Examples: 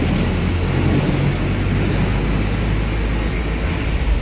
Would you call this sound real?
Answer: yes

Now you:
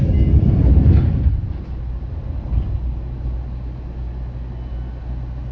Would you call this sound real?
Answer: yes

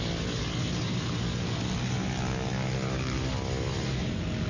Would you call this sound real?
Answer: yes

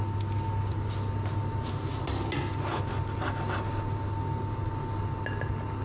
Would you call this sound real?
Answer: yes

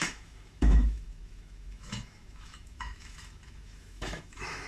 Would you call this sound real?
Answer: no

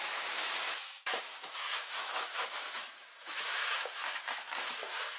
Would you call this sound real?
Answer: no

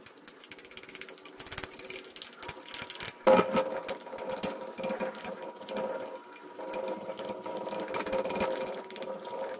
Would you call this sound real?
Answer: yes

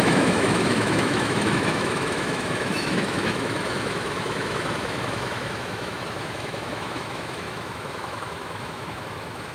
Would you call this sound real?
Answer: no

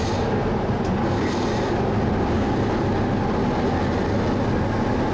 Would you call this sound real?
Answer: yes